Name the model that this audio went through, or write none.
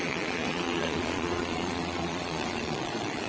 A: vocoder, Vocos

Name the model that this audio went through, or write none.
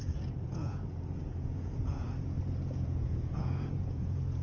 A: vocoder, Vocos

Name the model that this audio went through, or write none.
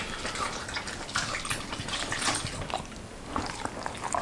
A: none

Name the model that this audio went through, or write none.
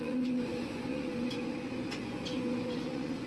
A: vocoder, Vocos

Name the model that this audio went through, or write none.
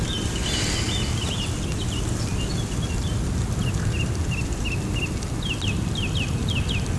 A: none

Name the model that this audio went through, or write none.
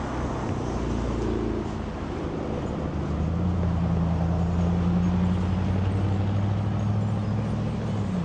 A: none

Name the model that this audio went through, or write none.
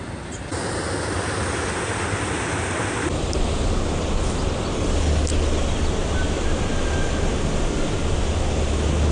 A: none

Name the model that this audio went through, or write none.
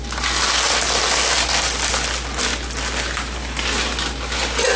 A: none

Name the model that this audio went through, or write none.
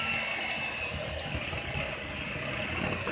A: none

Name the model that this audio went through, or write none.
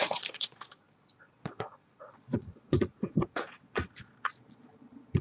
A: vocoder, Vocos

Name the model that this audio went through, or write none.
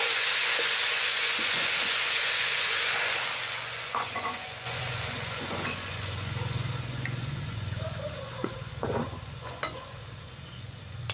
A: vocoder, Vocos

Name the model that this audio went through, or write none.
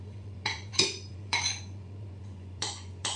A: vocoder, Vocos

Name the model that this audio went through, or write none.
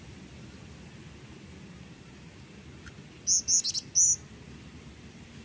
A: none